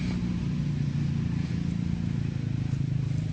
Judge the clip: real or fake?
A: real